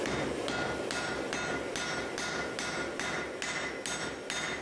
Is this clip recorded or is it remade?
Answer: recorded